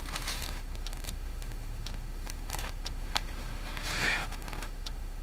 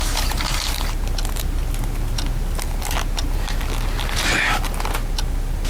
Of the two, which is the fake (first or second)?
first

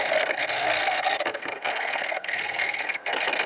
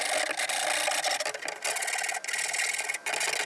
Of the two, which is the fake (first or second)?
first